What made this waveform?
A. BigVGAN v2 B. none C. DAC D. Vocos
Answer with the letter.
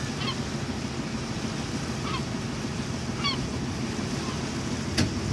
B